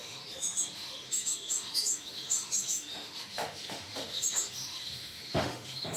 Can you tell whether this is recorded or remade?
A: remade